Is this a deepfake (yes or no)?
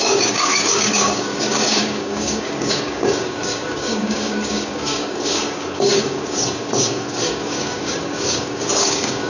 yes